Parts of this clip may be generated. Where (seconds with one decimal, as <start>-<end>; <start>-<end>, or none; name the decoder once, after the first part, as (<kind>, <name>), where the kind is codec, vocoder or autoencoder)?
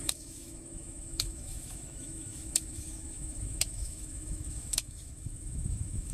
0.0-6.1 (autoencoder, DAC-VAE)